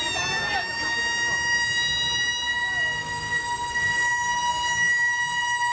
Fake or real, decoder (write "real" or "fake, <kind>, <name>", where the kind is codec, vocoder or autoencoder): real